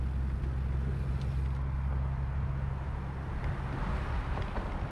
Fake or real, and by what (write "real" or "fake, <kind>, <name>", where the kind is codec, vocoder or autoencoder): real